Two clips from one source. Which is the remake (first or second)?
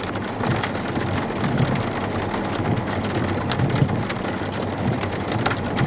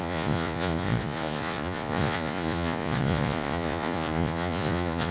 second